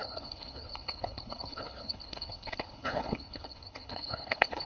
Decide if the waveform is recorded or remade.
remade